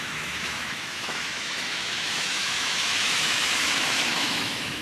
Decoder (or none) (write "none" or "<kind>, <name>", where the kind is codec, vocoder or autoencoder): autoencoder, DAC-VAE